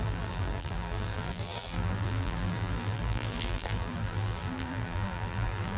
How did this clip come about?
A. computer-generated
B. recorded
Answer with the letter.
A